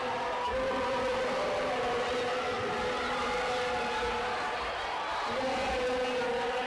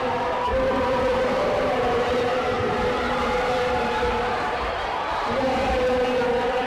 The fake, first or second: second